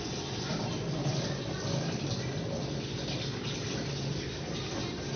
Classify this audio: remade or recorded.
recorded